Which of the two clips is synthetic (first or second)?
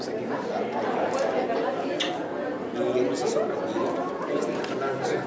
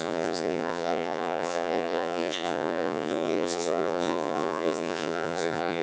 second